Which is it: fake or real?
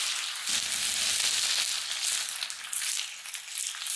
real